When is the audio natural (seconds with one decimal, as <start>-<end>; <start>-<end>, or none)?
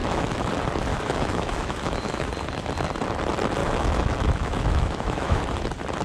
0.5-0.9; 2.3-3.6; 5.4-6.0